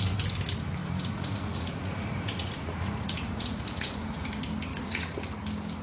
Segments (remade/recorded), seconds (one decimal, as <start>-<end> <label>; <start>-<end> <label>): 0.0-0.8 recorded; 0.8-4.3 remade; 4.3-4.7 recorded; 4.7-5.2 remade; 5.2-5.8 recorded